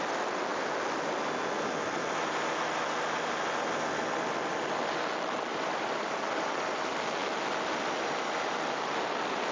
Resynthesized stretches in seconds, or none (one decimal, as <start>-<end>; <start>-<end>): 5.5-6.8